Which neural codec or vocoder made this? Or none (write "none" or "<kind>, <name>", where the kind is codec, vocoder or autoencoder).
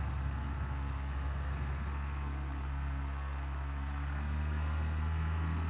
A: codec, SNAC